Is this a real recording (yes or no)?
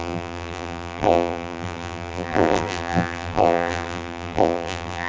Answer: no